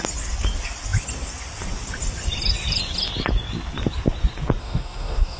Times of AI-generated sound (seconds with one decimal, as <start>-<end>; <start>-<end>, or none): 4.6-5.4